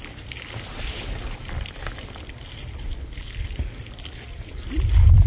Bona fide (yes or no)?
yes